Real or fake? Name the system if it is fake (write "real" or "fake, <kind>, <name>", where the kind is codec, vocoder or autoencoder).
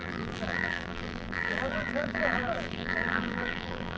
fake, vocoder, BigVGAN v2